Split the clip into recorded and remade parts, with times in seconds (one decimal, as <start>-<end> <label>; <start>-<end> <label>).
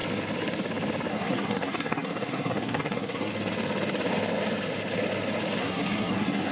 0.0-1.1 recorded; 1.1-3.3 remade; 3.3-5.6 recorded; 5.6-6.5 remade